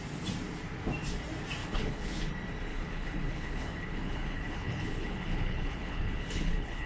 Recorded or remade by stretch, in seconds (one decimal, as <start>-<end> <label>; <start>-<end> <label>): 0.0-1.6 recorded; 1.6-2.3 remade; 2.3-2.7 recorded; 2.7-6.9 remade